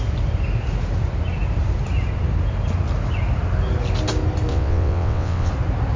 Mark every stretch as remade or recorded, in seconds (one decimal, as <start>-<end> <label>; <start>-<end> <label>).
0.0-4.5 recorded; 4.5-5.5 remade; 5.5-6.0 recorded